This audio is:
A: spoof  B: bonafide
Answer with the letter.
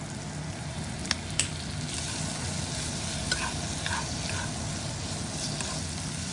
B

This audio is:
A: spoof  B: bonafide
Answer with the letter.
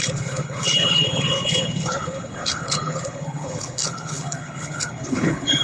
A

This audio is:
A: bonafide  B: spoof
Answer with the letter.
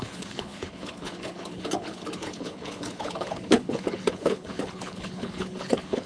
B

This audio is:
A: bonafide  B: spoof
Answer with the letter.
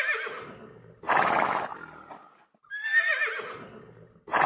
A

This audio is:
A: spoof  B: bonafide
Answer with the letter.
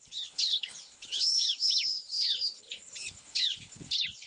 A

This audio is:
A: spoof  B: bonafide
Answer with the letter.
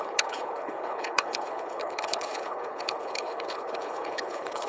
A